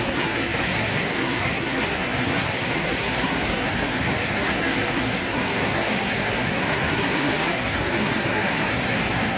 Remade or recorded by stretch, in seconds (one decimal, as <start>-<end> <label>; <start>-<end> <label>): 0.0-9.4 remade